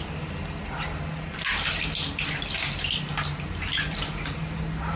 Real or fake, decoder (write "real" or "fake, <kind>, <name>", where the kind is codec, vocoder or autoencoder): real